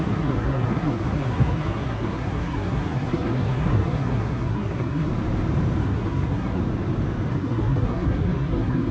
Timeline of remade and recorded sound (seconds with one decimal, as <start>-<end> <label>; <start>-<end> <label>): 0.0-5.1 remade; 5.1-5.8 recorded; 5.8-6.6 remade; 6.6-7.3 recorded; 7.3-8.9 remade